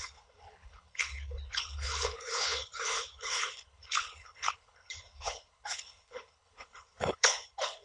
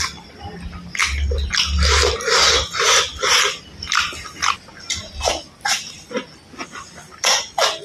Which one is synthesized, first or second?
first